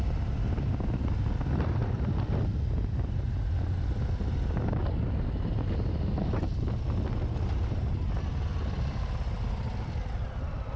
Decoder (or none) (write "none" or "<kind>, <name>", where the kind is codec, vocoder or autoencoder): none